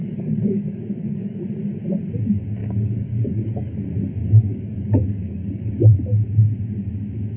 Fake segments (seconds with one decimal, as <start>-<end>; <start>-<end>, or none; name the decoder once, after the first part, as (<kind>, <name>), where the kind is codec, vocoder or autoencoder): 0.0-1.4 (codec, DAC); 2.6-3.7; 4.2-6.0